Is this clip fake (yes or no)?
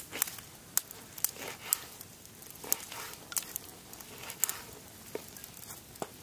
no